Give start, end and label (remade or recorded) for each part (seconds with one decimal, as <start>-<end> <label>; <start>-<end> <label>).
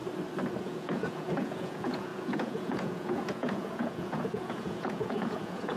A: 0.0-0.6 recorded; 0.6-5.8 remade